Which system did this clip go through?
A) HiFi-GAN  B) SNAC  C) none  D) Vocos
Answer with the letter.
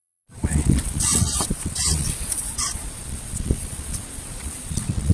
D